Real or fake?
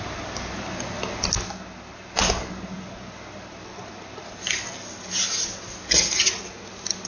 real